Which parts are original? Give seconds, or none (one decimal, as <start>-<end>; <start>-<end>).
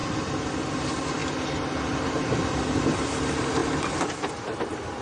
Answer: 0.0-0.7; 1.2-2.5